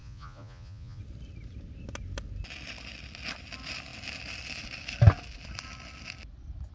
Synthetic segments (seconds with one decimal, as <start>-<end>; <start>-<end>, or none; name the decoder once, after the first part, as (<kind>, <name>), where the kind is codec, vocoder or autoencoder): 0.0-1.0 (vocoder, Vocos)